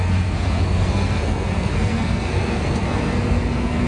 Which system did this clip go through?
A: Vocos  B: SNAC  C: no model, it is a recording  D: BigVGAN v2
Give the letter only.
B